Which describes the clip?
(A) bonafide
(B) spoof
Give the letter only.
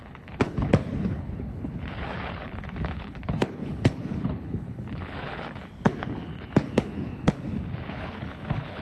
B